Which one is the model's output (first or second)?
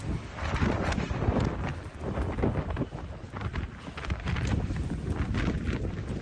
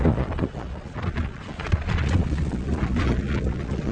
second